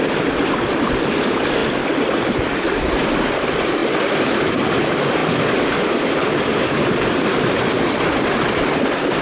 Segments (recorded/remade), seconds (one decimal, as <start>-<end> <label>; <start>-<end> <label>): 0.0-3.8 recorded; 3.8-4.8 remade; 4.8-5.2 recorded; 5.2-9.2 remade